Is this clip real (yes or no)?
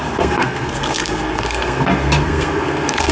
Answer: no